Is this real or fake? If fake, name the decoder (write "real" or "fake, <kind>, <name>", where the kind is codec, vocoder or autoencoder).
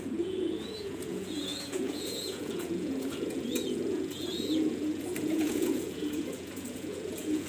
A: fake, vocoder, Vocos